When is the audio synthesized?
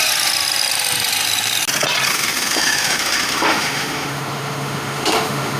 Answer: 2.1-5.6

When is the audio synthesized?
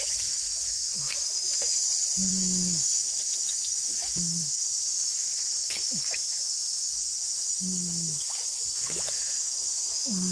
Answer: 0.0-1.8; 2.3-10.3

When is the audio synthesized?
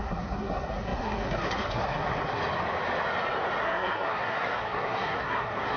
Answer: 0.0-2.4; 3.6-5.8